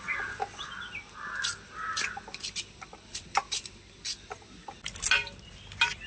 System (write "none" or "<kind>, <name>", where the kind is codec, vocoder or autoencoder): none